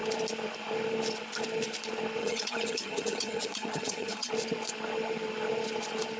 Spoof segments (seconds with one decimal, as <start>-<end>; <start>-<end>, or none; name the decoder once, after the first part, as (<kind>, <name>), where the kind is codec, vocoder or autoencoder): 2.2-4.3 (vocoder, HiFi-GAN)